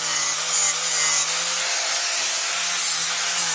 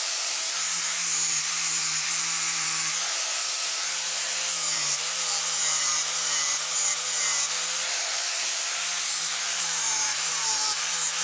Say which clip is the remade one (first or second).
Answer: second